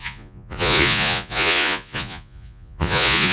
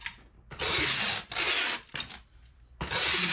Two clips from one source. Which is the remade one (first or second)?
first